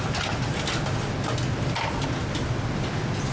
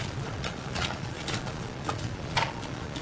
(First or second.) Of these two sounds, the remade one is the second